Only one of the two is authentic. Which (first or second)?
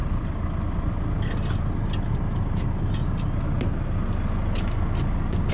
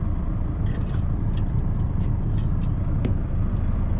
first